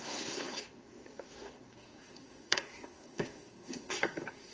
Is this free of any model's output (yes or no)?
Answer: no